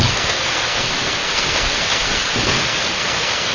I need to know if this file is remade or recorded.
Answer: remade